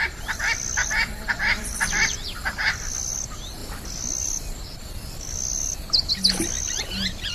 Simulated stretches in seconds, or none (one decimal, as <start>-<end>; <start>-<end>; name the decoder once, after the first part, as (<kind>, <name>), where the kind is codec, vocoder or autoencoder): 0.8-3.1 (vocoder, BigVGAN v2)